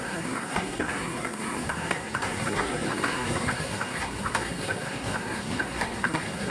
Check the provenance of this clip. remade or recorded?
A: remade